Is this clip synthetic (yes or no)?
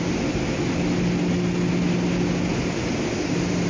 no